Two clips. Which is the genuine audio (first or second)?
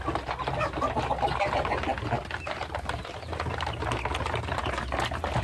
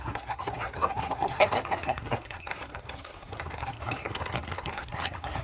first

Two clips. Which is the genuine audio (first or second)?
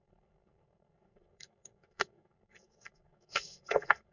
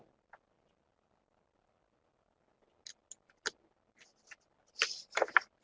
second